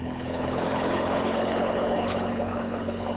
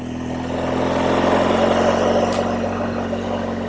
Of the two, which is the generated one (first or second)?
first